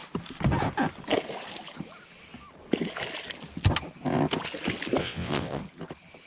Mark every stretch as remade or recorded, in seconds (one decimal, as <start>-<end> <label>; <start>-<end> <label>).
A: 0.0-5.0 recorded; 5.0-5.6 remade; 5.6-6.3 recorded